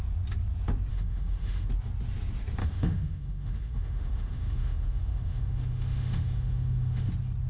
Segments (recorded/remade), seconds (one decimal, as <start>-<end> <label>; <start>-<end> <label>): 0.0-0.9 recorded; 0.9-1.7 remade; 1.7-2.6 recorded; 2.6-7.1 remade; 7.1-7.5 recorded